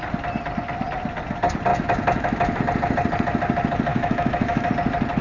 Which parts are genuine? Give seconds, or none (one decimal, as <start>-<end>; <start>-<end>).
0.0-1.7; 2.6-3.9; 4.7-5.2